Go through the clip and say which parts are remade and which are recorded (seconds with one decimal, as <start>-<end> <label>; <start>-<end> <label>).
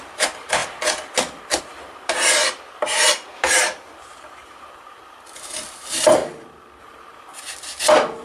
0.0-0.6 remade; 0.6-1.6 recorded; 1.6-6.2 remade; 6.2-6.8 recorded; 6.8-7.3 remade; 7.3-8.2 recorded